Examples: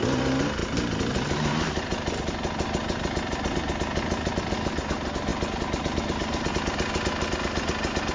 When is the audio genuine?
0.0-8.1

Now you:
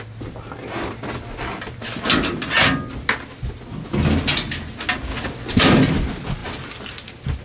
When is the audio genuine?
0.0-7.4